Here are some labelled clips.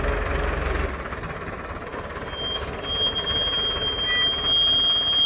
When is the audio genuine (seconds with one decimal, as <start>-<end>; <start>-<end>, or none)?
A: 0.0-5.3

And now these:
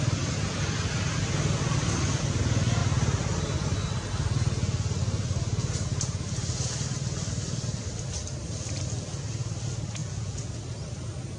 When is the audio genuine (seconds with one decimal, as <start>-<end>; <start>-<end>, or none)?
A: 0.0-10.0; 10.5-11.4

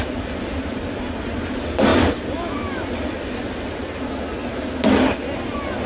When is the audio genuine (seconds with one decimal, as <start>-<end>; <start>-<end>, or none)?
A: 0.0-5.9

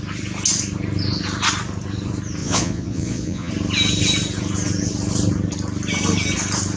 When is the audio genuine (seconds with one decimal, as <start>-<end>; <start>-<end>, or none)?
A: 0.0-2.4; 3.5-6.8

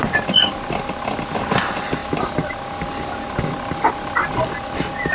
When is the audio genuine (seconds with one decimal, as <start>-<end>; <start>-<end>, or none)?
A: 0.0-5.1